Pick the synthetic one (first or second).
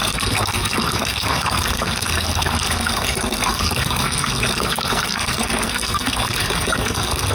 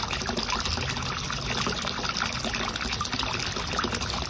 first